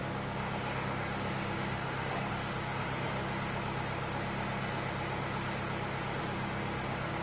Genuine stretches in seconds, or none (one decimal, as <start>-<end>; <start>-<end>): 3.2-6.2